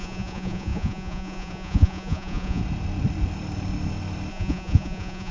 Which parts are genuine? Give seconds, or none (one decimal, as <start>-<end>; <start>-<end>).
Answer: 2.6-4.3